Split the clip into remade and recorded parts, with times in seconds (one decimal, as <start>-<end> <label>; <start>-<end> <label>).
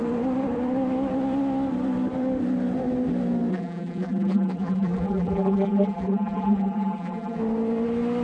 0.0-3.5 recorded; 3.5-7.4 remade; 7.4-8.2 recorded